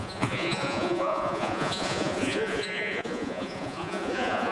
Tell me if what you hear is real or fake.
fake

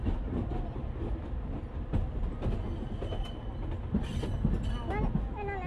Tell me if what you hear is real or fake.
real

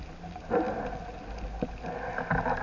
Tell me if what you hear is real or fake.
real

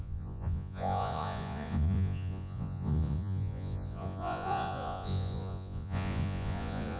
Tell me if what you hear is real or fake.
fake